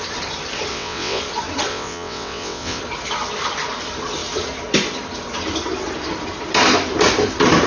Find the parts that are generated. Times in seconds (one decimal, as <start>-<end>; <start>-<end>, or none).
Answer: 0.7-1.2; 1.7-2.8